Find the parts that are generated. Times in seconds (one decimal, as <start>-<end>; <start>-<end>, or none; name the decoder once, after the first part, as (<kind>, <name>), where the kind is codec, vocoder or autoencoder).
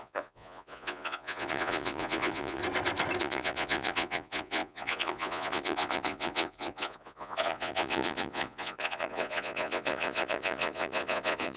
0.0-2.6 (vocoder, Vocos); 3.2-11.6